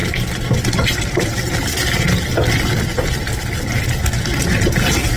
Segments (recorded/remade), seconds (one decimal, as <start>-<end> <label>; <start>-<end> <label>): 0.0-5.2 recorded